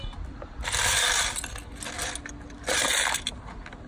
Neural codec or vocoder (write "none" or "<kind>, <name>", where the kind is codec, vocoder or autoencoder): none